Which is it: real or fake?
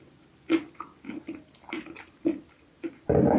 real